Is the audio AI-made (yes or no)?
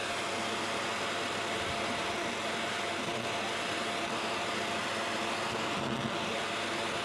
no